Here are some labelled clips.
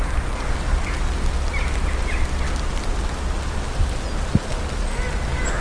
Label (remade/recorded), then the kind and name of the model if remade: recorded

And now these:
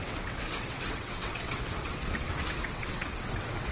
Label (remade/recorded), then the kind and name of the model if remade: remade, vocoder, WaveNeXt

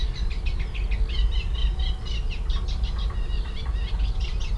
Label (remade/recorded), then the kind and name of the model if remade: recorded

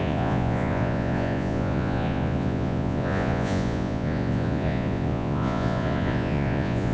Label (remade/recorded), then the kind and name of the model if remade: remade, vocoder, Vocos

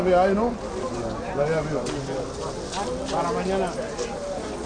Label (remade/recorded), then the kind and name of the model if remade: recorded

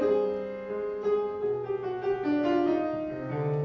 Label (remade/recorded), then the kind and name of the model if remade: recorded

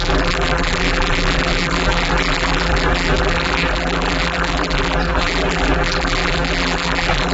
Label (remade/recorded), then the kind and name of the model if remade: remade, vocoder, BigVGAN v2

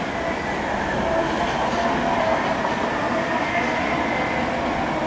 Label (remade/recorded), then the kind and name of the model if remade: recorded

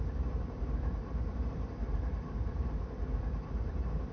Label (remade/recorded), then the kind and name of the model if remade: remade, vocoder, BigVGAN v2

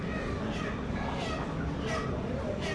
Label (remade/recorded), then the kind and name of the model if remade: recorded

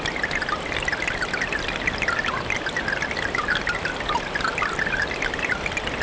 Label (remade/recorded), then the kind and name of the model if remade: recorded